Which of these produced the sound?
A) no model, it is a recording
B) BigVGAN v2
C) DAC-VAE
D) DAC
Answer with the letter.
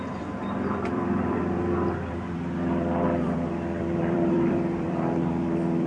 B